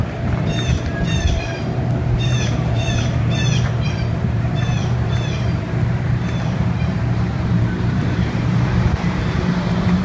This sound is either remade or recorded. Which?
remade